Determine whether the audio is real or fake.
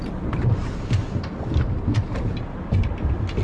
real